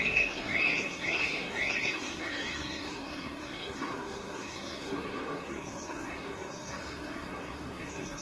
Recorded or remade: remade